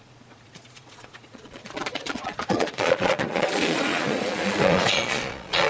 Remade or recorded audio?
remade